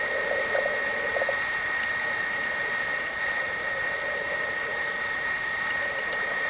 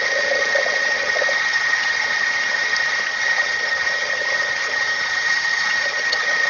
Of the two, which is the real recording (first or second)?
first